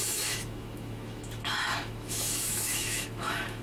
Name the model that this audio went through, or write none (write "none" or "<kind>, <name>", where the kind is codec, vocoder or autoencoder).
autoencoder, DAC-VAE